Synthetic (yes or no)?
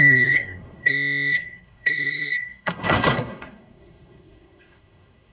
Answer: yes